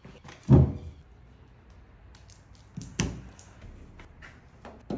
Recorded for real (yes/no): yes